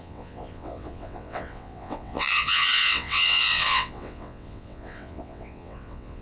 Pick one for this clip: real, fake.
fake